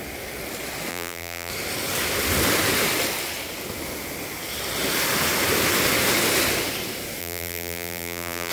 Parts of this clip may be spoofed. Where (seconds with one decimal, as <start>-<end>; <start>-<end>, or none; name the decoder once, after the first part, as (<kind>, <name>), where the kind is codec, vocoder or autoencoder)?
0.9-1.5 (vocoder, BigVGAN v2); 7.2-8.5